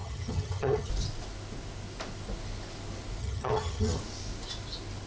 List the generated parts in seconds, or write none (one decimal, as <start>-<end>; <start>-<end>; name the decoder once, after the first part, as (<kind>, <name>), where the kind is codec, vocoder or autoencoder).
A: 0.0-0.9 (vocoder, HiFi-GAN); 3.2-4.0